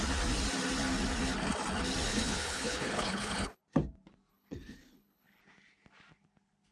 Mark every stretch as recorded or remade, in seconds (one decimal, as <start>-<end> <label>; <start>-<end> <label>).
0.0-2.1 recorded; 2.1-3.6 remade; 3.6-4.3 recorded; 4.3-5.4 remade; 5.4-6.7 recorded